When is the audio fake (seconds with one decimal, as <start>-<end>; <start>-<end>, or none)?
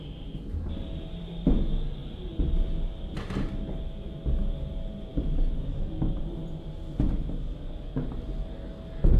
5.1-6.2